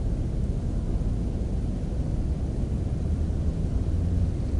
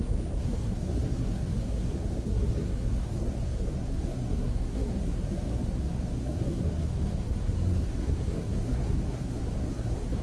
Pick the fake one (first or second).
second